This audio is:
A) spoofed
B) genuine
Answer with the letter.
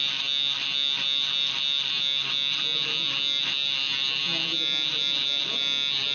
B